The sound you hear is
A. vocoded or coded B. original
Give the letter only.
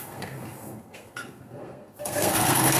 A